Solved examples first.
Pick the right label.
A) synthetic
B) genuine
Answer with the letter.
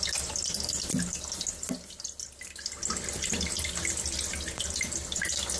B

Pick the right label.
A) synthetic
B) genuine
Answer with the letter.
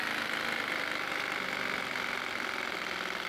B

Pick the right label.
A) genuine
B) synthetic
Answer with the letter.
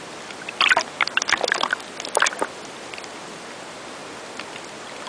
A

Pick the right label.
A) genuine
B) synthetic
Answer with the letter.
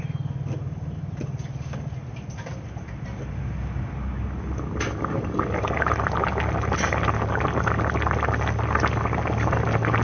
A